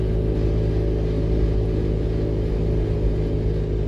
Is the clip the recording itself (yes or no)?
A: yes